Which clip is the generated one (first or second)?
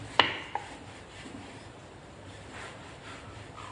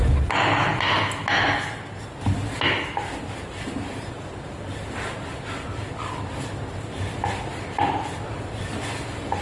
first